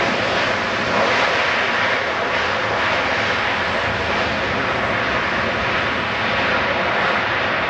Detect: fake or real real